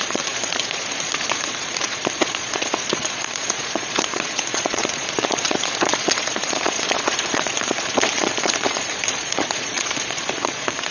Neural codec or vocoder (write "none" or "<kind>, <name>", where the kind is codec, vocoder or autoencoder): vocoder, Vocos